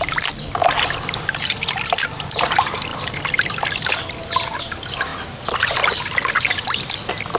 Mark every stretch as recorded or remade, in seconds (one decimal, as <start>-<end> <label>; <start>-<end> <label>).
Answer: 0.0-7.4 recorded